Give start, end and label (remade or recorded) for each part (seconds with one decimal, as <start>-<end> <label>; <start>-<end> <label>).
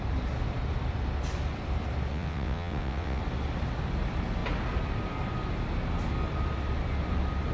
0.0-2.1 recorded; 2.1-3.2 remade; 3.2-7.5 recorded